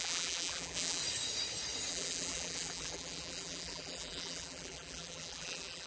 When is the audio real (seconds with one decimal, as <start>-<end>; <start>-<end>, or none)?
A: 1.0-1.9